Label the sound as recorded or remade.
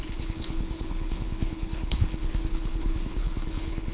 remade